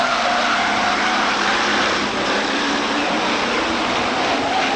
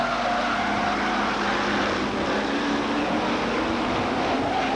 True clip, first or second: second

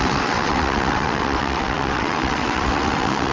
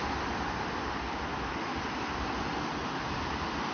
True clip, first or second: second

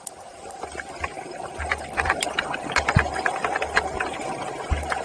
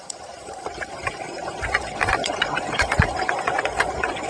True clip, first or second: first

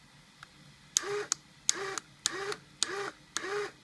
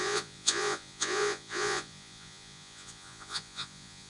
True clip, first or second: first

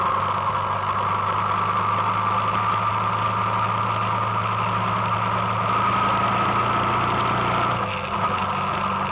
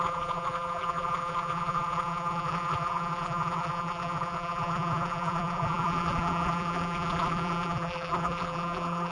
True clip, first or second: first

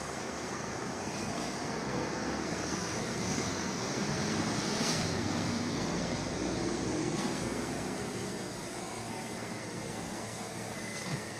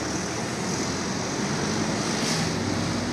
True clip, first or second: second